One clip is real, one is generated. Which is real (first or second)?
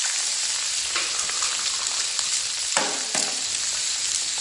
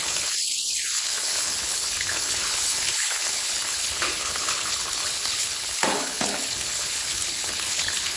first